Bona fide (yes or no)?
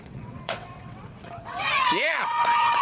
no